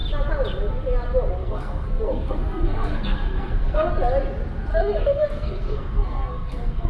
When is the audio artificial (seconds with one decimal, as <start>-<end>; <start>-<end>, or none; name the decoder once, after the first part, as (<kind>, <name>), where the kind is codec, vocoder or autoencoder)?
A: 1.4-3.9 (codec, SNAC); 4.7-6.9